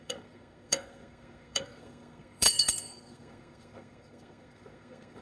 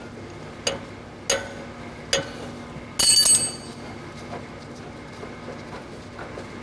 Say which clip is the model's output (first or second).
first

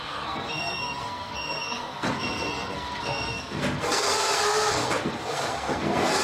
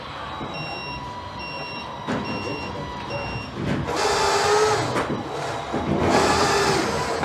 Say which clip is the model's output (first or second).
first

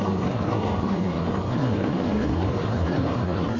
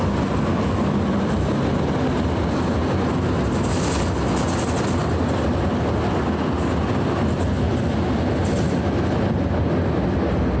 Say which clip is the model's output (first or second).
first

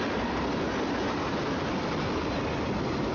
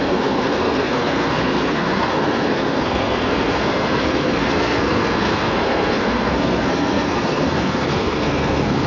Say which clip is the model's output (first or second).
second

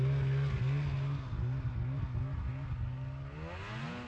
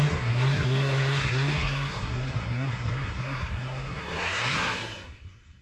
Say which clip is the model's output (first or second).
second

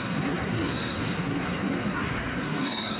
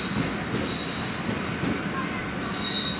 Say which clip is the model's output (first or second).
first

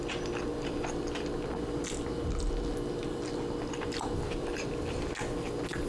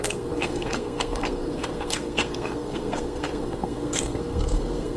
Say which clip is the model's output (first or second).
second